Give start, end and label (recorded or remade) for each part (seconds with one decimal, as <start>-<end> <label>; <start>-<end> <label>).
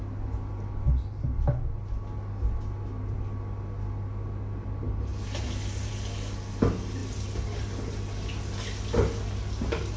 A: 0.0-10.0 recorded